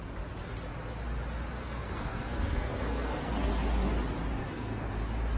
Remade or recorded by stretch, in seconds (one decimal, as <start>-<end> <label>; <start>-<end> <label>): 0.0-1.6 recorded; 1.6-3.5 remade; 3.5-4.4 recorded; 4.4-4.9 remade; 4.9-5.4 recorded